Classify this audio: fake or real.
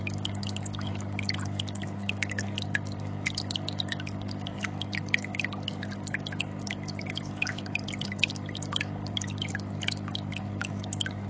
fake